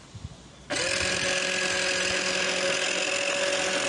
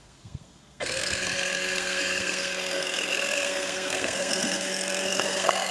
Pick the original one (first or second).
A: first